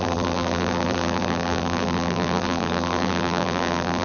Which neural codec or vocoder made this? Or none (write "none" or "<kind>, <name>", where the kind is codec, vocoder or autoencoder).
vocoder, BigVGAN v2